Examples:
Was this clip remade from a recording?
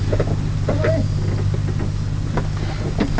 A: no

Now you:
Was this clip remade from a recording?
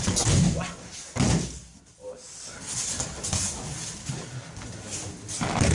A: no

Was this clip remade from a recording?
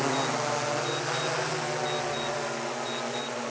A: no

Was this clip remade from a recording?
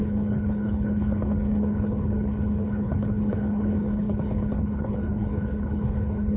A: yes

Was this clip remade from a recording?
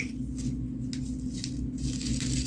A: no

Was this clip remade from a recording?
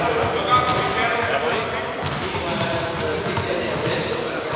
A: no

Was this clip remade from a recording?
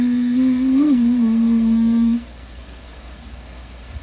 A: yes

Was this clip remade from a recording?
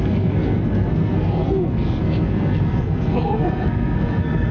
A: yes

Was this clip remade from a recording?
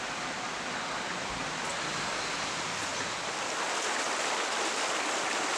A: no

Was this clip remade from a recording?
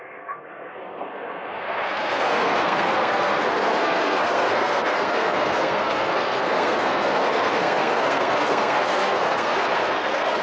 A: yes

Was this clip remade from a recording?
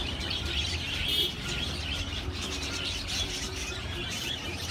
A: yes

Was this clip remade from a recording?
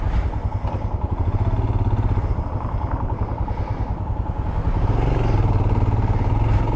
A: no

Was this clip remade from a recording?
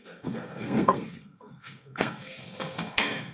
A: yes